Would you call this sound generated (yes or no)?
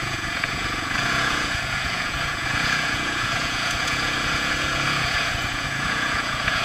yes